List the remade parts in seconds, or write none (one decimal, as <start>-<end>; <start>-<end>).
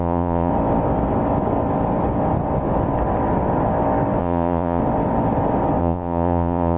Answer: 0.0-0.5; 4.2-4.8; 5.8-6.8